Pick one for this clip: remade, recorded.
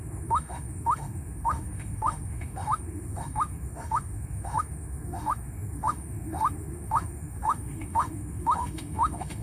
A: remade